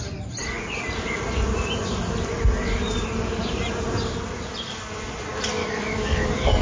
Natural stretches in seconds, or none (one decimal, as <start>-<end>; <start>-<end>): 0.0-5.6